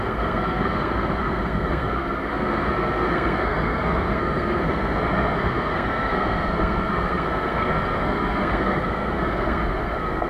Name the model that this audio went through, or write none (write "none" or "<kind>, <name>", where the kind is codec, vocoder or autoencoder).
codec, SNAC